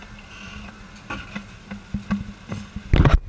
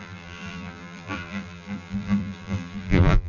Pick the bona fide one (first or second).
first